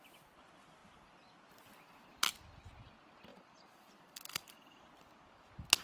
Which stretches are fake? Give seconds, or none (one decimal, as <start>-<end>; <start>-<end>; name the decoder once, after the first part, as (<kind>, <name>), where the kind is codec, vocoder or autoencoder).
3.3-4.8 (vocoder, BigVGAN v2)